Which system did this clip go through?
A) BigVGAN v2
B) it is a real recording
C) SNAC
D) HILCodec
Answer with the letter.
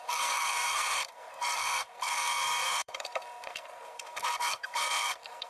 C